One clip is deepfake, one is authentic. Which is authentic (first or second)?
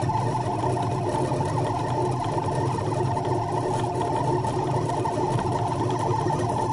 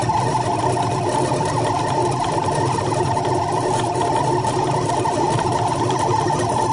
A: first